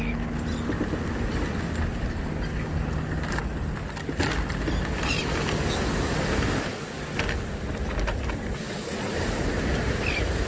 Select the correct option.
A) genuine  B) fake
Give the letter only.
A